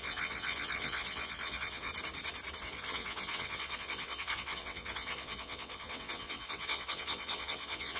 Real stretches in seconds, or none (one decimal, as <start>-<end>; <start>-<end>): 1.9-2.6